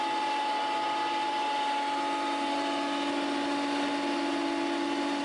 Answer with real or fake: real